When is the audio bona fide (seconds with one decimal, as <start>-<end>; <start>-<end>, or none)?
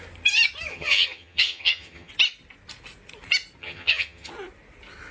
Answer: 0.0-0.7; 2.1-3.6; 4.3-5.1